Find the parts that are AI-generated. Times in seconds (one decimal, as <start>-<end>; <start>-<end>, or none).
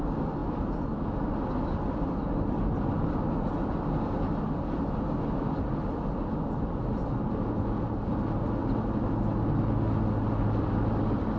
none